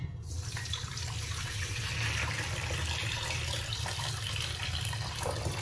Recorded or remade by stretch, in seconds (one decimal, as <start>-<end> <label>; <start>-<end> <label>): 0.0-1.4 recorded; 1.4-1.9 remade; 1.9-5.6 recorded